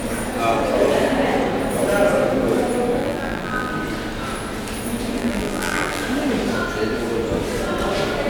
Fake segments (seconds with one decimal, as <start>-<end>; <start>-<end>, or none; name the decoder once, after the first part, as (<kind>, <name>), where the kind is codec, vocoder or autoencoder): 3.0-3.7 (vocoder, BigVGAN v2); 5.2-6.0

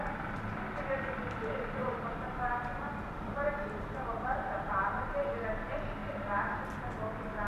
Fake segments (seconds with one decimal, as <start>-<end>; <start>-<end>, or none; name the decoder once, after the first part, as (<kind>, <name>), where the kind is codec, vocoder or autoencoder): 1.8-4.9 (vocoder, BigVGAN v2)

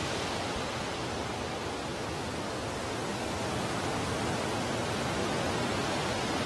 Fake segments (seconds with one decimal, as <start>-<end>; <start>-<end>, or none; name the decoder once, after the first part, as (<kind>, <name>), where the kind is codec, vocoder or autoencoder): none

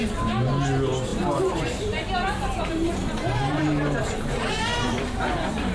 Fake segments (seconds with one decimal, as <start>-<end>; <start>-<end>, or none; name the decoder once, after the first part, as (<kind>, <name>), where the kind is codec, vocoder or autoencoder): 1.1-4.5 (vocoder, BigVGAN v2)

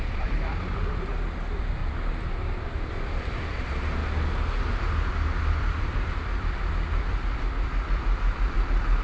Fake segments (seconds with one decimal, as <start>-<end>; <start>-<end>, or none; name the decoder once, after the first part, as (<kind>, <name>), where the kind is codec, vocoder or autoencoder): 0.0-1.8 (vocoder, BigVGAN v2); 2.9-4.0; 4.8-9.0

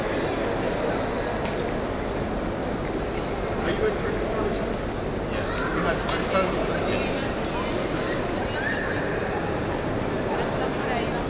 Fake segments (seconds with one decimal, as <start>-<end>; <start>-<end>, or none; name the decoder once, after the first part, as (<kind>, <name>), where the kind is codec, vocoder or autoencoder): 2.6-4.2 (vocoder, BigVGAN v2)